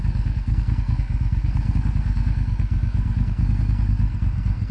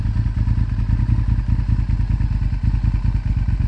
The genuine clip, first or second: second